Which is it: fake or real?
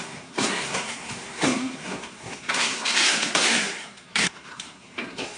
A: fake